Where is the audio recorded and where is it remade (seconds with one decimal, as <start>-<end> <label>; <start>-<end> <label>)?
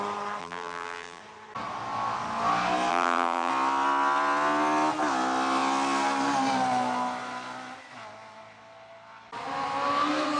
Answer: 0.0-0.4 recorded; 0.4-1.2 remade; 1.2-2.9 recorded; 2.9-3.5 remade; 3.5-10.4 recorded